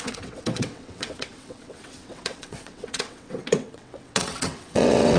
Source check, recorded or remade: remade